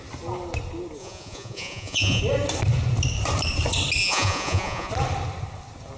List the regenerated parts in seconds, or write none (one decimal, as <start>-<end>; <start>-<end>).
1.0-2.2; 4.0-4.9